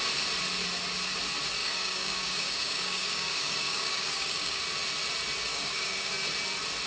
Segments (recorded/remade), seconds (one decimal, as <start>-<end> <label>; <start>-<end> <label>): 0.0-1.6 recorded; 1.6-4.6 remade; 4.6-5.5 recorded; 5.5-6.1 remade; 6.1-6.9 recorded